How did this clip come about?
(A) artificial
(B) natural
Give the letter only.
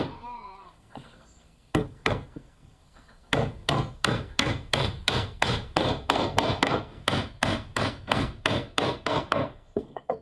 A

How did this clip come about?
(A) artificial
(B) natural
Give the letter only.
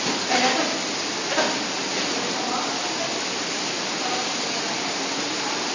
B